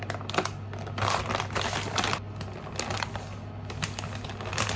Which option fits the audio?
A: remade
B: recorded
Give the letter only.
B